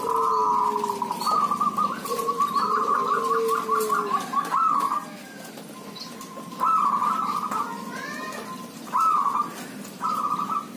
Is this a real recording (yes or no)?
yes